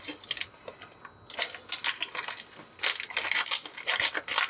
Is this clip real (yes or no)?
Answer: yes